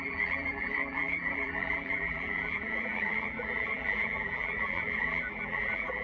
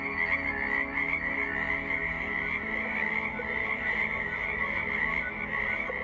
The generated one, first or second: first